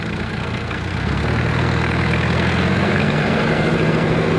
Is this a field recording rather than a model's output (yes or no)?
no